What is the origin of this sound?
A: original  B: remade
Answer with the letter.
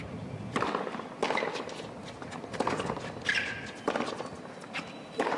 A